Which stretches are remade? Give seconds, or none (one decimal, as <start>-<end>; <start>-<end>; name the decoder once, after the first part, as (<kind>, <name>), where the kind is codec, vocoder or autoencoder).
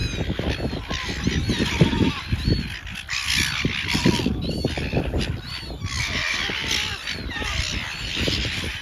0.0-5.2 (vocoder, BigVGAN v2)